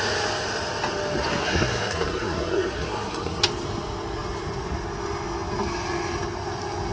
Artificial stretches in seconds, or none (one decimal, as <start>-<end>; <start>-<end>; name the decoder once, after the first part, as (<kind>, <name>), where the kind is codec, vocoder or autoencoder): 1.4-3.4 (codec, SNAC)